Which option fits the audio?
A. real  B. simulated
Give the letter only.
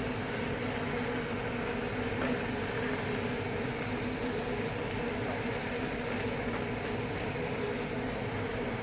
A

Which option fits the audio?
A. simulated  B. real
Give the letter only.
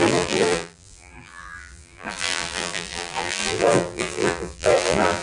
A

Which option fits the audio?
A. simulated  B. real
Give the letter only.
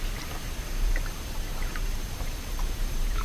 A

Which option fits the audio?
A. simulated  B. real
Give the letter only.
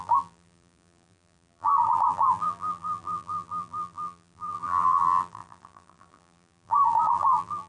A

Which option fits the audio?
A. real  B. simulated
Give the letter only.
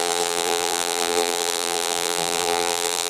B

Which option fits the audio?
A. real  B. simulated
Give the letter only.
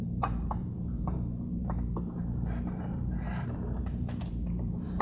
B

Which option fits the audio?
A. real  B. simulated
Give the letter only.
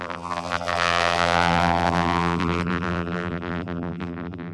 B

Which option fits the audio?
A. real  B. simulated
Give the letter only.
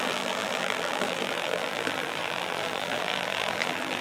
B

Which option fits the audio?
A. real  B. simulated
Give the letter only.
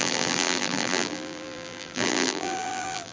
B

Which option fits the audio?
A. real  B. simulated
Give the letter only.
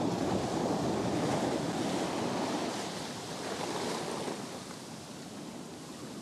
A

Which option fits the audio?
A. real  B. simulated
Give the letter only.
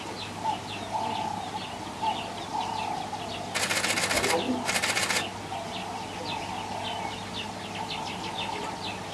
A